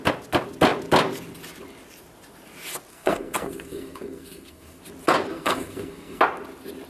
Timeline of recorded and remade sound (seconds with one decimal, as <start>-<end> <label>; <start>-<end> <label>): 0.0-2.9 recorded; 2.9-4.8 remade; 4.8-5.3 recorded; 5.3-6.2 remade; 6.2-6.9 recorded